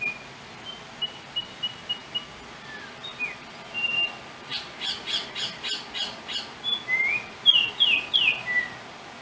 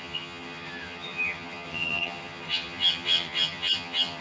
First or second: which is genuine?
first